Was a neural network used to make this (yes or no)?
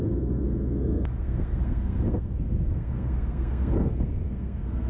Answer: yes